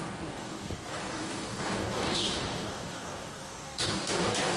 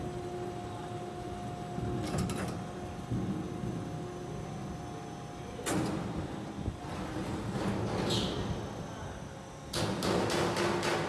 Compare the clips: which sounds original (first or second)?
second